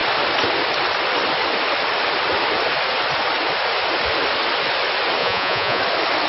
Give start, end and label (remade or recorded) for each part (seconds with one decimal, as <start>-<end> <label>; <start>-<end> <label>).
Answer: 0.0-5.2 recorded; 5.2-5.8 remade; 5.8-6.3 recorded